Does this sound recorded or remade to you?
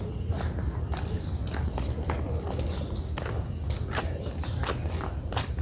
recorded